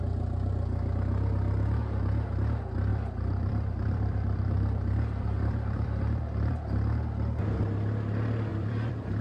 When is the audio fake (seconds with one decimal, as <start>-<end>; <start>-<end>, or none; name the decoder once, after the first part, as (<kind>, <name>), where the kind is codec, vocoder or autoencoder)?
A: 2.9-6.5 (vocoder, BigVGAN v2); 8.5-9.2

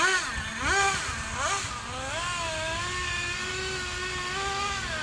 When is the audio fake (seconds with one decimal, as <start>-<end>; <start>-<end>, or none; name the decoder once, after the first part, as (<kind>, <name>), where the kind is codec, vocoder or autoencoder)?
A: none

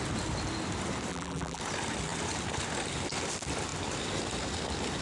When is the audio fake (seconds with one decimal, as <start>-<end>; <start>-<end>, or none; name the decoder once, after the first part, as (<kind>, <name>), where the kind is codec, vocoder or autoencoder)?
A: 1.1-1.6 (vocoder, BigVGAN v2)

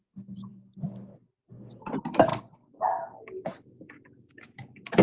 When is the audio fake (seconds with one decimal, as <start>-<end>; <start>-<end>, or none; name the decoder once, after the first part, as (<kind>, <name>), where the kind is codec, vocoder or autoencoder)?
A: 0.5-1.8 (vocoder, BigVGAN v2); 2.3-4.3

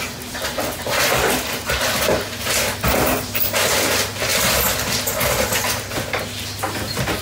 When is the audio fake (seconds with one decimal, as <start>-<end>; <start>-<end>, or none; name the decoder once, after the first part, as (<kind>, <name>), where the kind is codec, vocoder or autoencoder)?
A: none

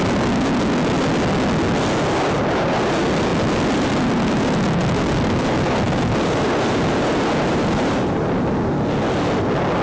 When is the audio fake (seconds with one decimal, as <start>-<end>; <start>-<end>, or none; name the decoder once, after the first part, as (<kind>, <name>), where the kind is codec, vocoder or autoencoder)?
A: 3.3-8.5 (vocoder, BigVGAN v2)

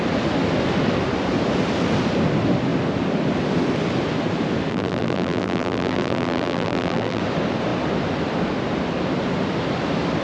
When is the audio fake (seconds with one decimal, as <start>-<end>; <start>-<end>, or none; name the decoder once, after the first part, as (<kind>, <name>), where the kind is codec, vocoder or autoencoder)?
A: 4.7-7.2 (vocoder, BigVGAN v2)